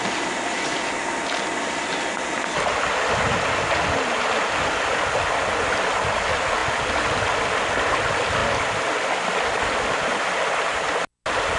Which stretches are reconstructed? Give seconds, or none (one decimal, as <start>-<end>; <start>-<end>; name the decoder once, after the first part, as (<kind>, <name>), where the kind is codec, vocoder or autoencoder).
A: none